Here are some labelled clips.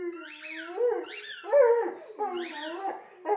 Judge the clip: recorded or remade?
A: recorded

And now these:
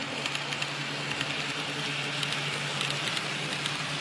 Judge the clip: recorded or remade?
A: recorded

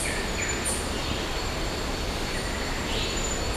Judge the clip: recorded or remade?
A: recorded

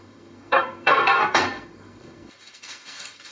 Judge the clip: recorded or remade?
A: remade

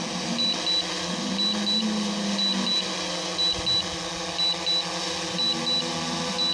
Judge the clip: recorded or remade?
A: recorded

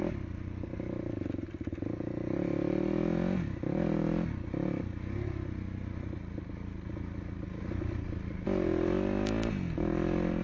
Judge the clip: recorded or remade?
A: recorded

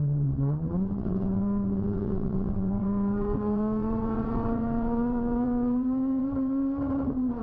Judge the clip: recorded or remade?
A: remade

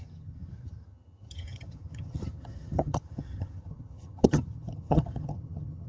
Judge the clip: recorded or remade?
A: remade